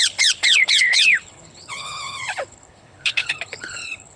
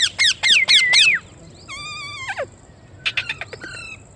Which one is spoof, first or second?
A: first